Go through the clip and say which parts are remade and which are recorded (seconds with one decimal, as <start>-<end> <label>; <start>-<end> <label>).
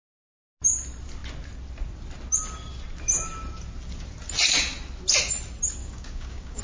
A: 0.0-5.8 recorded; 5.8-6.6 remade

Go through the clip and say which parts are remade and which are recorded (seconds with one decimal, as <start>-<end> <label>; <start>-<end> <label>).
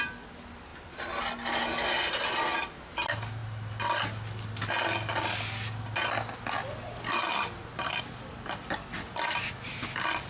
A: 0.0-10.3 recorded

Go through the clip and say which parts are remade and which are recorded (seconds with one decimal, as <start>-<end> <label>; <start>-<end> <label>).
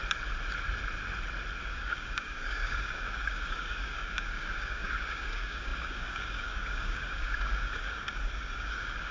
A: 0.0-1.6 recorded; 1.6-9.1 remade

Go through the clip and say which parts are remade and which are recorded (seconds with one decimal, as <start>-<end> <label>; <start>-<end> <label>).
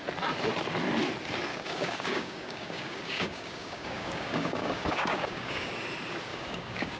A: 0.0-1.5 recorded; 1.5-5.7 remade; 5.7-6.3 recorded; 6.3-7.0 remade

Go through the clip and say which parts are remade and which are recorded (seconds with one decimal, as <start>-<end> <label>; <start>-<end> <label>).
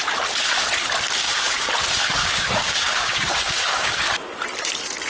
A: 0.0-1.2 recorded; 1.2-1.7 remade; 1.7-2.2 recorded; 2.2-4.0 remade; 4.0-5.1 recorded